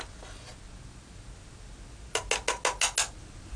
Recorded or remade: recorded